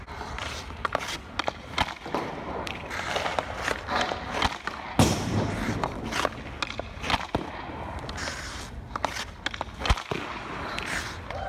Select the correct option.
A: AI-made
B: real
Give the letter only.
B